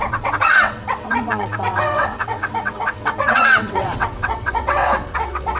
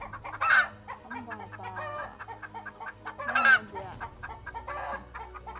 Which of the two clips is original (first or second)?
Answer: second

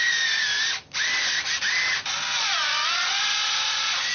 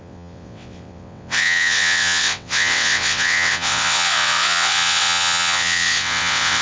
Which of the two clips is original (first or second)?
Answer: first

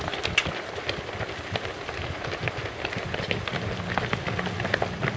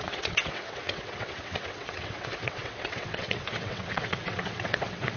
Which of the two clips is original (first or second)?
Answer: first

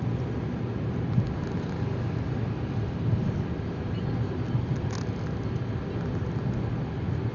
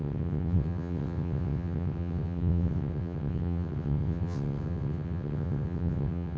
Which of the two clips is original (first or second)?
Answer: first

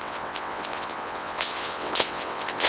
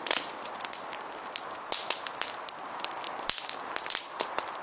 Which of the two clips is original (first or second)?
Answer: second